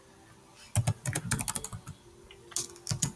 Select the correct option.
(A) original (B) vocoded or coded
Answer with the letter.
A